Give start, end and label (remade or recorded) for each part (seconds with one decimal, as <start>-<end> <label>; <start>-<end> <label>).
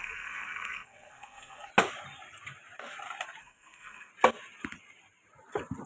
0.0-1.7 remade; 1.7-3.4 recorded; 3.4-4.1 remade; 4.1-5.9 recorded